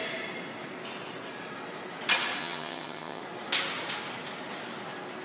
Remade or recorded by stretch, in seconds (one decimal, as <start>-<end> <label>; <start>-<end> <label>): 0.0-2.4 recorded; 2.4-3.2 remade; 3.2-5.2 recorded